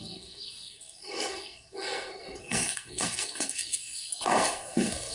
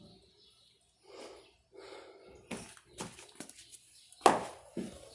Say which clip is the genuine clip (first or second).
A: second